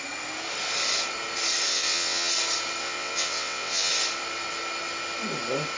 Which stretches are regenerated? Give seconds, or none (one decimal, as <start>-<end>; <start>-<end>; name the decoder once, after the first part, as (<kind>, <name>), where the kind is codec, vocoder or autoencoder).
1.7-2.3 (vocoder, WaveNeXt); 2.8-3.9